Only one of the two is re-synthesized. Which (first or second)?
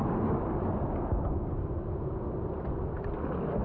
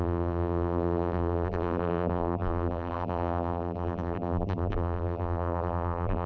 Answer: second